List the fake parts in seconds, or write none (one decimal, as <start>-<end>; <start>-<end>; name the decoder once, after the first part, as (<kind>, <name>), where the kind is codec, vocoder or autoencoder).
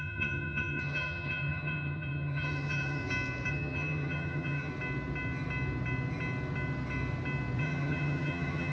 0.0-3.0 (vocoder, HiFi-GAN); 3.5-4.7; 7.6-8.7